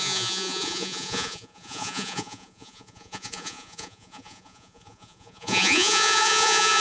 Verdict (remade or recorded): remade